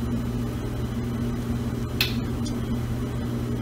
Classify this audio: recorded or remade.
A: recorded